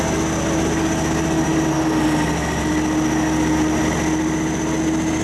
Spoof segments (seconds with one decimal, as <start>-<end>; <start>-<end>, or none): none